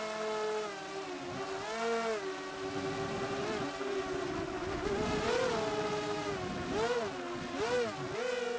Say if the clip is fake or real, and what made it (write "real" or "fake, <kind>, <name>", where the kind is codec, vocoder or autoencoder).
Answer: real